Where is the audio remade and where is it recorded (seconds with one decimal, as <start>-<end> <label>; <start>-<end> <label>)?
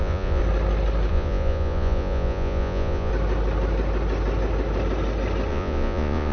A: 0.0-0.4 remade; 0.4-1.1 recorded; 1.1-3.1 remade; 3.1-5.5 recorded; 5.5-6.3 remade